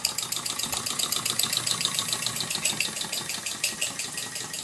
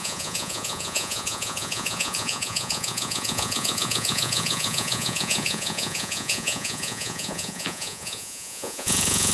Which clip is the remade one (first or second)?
second